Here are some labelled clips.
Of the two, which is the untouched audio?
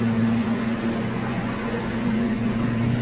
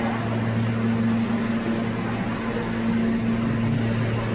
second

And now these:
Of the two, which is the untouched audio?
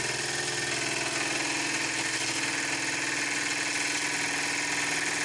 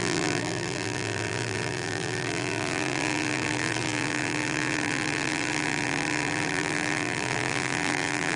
first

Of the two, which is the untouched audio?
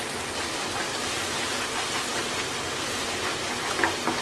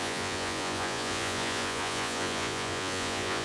first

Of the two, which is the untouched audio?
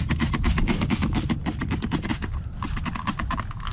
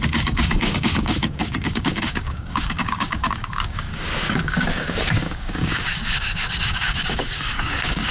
first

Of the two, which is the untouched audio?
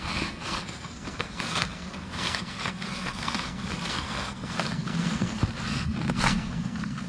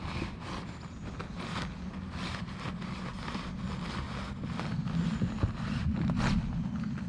second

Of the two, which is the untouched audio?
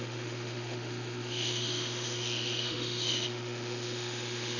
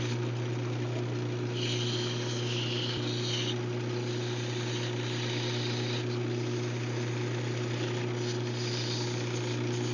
second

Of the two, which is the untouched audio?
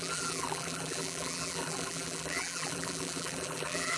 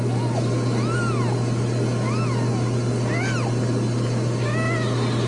second